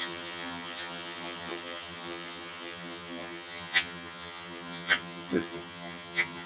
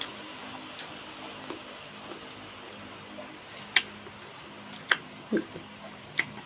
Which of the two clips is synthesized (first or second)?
first